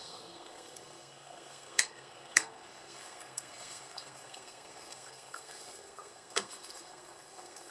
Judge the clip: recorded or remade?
remade